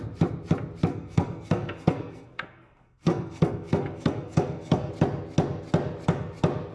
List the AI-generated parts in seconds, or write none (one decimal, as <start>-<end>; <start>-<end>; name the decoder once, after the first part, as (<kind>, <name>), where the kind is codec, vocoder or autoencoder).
0.9-4.9 (codec, SNAC)